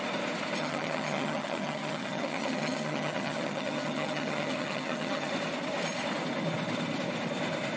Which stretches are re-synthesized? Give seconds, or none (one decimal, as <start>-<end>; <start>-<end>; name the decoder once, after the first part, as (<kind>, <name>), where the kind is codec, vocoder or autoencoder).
0.6-5.3 (vocoder, HiFi-GAN)